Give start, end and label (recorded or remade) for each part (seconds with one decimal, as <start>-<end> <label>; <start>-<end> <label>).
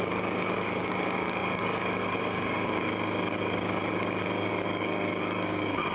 0.0-5.9 remade